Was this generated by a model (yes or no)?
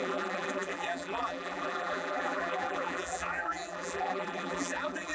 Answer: yes